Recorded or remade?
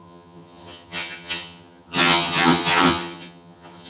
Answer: remade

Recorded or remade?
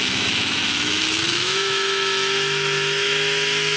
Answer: remade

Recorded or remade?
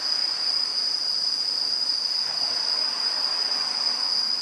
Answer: recorded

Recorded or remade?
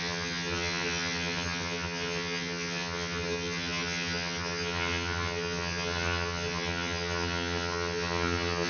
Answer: remade